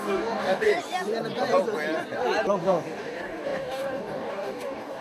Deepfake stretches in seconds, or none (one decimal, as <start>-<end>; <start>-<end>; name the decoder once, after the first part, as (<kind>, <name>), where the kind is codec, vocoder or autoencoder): 0.0-0.7 (codec, DAC); 2.6-5.0